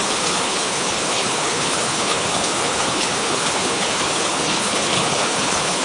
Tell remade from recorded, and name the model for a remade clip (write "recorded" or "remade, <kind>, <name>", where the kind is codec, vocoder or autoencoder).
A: remade, codec, HILCodec